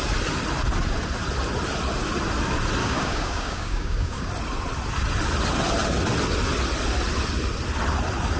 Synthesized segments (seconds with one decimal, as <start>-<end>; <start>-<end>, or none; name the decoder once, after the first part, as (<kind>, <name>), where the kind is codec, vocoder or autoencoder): 2.8-4.3 (codec, DAC)